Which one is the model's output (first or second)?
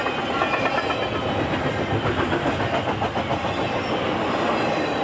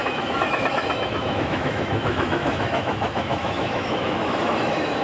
second